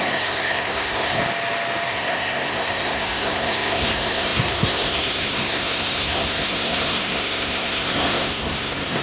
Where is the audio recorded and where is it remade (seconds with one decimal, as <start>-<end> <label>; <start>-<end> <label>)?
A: 0.0-1.2 remade; 1.2-1.9 recorded; 1.9-9.0 remade

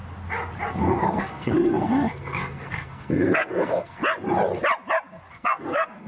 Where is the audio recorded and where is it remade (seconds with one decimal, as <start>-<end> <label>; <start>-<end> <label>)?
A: 0.0-0.7 recorded; 0.7-4.0 remade; 4.0-5.3 recorded; 5.3-6.1 remade

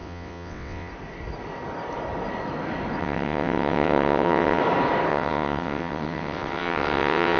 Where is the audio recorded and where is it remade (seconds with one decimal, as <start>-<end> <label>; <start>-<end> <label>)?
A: 0.0-0.9 remade; 0.9-3.0 recorded; 3.0-4.6 remade; 4.6-5.1 recorded; 5.1-7.4 remade

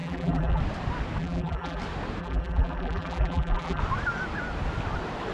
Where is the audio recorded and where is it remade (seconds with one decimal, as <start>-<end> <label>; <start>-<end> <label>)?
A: 0.0-0.6 remade; 0.6-1.2 recorded; 1.2-1.8 remade; 1.8-2.2 recorded; 2.2-3.8 remade; 3.8-5.3 recorded

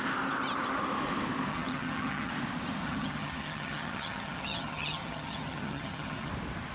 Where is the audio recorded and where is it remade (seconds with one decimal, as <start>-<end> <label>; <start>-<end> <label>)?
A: 0.0-1.5 recorded; 1.5-2.3 remade; 2.3-2.8 recorded; 2.8-6.3 remade; 6.3-6.7 recorded

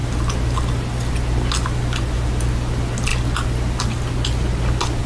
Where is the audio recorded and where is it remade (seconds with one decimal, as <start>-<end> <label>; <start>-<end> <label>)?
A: 0.0-5.1 recorded

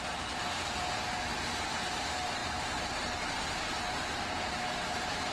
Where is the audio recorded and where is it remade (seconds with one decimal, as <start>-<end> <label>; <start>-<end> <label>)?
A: 0.0-5.3 remade